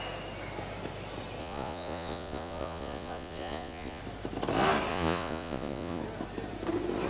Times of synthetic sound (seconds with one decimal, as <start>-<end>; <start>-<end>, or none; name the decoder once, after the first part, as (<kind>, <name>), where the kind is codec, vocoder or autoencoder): 1.4-4.0 (vocoder, Vocos); 4.9-6.0